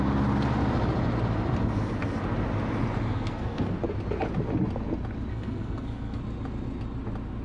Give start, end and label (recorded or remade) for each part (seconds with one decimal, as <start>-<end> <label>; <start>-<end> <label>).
0.0-3.1 recorded; 3.1-3.8 remade; 3.8-5.3 recorded; 5.3-6.2 remade; 6.2-7.4 recorded